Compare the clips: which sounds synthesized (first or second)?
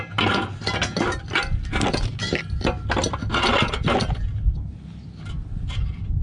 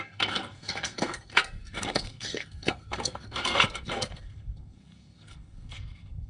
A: second